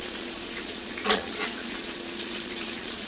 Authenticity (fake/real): fake